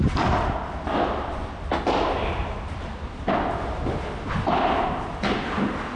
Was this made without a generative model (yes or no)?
yes